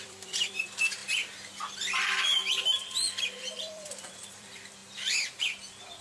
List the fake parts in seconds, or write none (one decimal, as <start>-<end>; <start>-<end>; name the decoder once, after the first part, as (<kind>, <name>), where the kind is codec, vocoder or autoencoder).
0.0-1.0 (vocoder, BigVGAN v2); 2.0-6.0